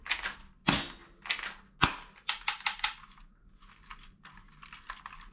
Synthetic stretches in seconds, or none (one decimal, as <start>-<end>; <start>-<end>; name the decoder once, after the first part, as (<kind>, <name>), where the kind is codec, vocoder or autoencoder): none